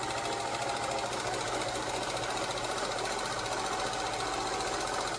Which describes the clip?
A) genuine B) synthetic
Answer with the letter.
A